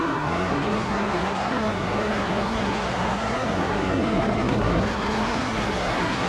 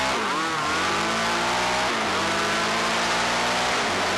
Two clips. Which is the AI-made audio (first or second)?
first